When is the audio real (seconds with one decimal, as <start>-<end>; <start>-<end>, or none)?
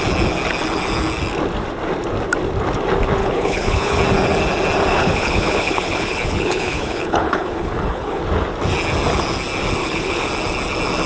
0.0-3.2; 4.0-4.9; 8.2-9.8; 10.3-11.1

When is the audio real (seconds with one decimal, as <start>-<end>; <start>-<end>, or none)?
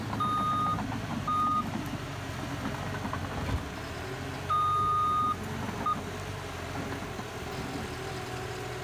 0.0-8.8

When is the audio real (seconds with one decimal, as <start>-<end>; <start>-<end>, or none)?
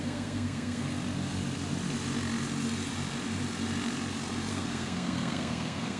0.9-4.5